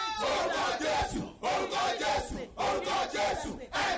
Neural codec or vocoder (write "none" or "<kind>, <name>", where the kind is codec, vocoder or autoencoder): none